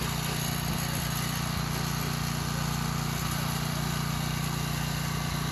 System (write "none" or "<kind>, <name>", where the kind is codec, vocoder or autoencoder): none